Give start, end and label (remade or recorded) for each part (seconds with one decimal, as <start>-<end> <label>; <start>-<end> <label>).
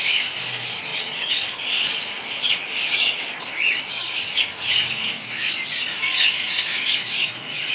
0.0-0.9 recorded; 0.9-4.4 remade; 4.4-7.7 recorded